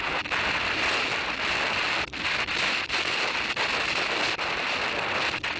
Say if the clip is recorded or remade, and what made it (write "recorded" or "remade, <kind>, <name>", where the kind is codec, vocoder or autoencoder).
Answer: recorded